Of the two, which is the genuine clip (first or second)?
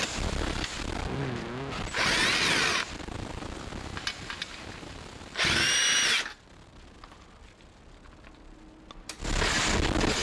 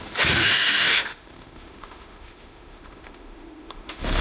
first